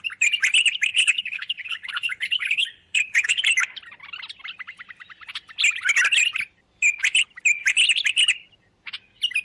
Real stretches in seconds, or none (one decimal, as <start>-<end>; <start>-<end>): 0.0-0.9; 3.4-9.4